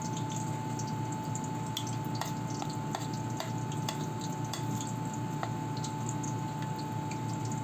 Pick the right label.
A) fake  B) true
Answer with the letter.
B